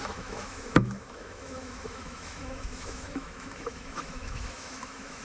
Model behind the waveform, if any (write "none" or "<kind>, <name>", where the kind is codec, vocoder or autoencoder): autoencoder, DAC-VAE